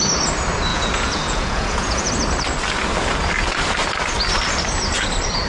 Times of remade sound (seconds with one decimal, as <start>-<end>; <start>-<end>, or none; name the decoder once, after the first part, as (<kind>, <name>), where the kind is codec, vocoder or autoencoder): 0.7-2.1 (vocoder, Vocos)